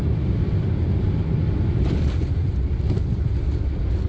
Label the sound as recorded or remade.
recorded